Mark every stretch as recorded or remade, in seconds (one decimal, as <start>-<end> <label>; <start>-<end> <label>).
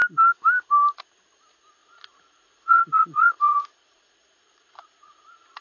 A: 0.0-1.8 recorded; 1.8-5.6 remade